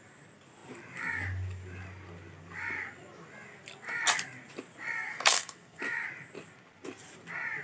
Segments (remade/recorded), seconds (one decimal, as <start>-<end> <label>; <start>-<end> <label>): 0.0-5.1 recorded; 5.1-5.8 remade; 5.8-7.6 recorded